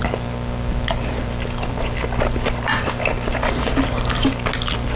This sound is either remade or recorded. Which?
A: recorded